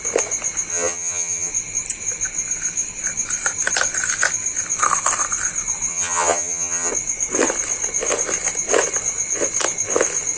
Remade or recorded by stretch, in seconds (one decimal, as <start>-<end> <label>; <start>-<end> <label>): 0.0-0.7 recorded; 0.7-1.5 remade; 1.5-5.9 recorded; 5.9-6.9 remade; 6.9-10.4 recorded